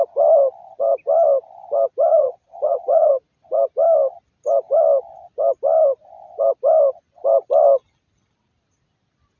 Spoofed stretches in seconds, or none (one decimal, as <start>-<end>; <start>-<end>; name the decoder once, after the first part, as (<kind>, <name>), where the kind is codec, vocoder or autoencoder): 2.1-3.1 (vocoder, Vocos)